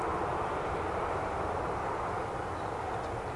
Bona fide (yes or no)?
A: yes